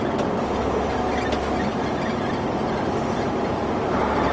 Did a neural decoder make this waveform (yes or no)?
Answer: no